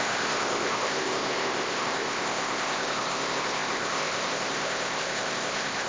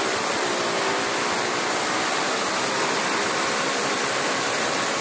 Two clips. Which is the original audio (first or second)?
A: second